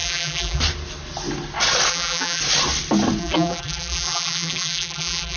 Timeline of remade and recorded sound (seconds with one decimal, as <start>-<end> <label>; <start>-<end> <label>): 0.0-0.6 remade; 0.6-1.9 recorded; 1.9-2.4 remade; 2.4-3.2 recorded; 3.2-5.4 remade